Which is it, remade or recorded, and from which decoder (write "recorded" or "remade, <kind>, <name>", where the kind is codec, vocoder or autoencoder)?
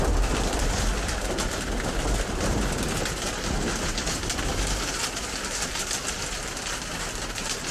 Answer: recorded